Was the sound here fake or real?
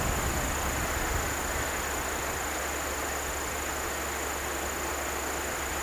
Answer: real